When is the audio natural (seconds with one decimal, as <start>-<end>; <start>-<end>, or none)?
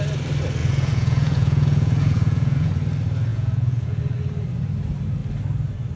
0.0-0.6; 2.7-3.3; 4.0-6.0